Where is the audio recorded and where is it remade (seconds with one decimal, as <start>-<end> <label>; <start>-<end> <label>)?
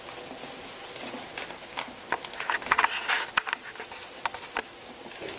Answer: 0.0-5.4 recorded